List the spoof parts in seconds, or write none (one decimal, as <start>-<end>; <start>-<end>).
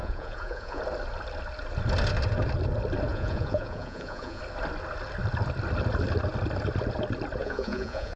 0.0-0.8; 3.1-4.4; 7.4-8.2